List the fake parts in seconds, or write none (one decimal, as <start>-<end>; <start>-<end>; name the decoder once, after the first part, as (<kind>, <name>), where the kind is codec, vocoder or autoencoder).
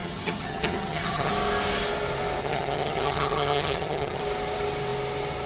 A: 0.0-1.3 (vocoder, HiFi-GAN); 2.4-4.2